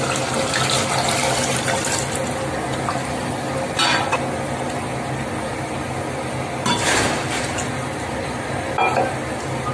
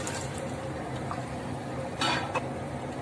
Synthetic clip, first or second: second